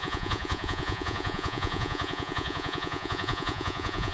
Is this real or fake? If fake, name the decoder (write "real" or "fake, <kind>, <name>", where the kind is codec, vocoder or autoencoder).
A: fake, vocoder, Vocos